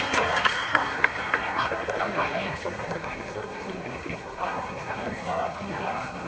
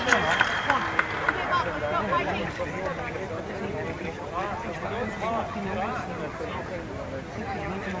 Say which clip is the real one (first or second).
second